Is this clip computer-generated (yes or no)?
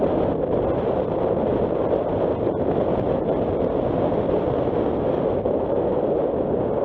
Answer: no